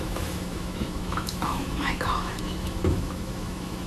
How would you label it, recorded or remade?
remade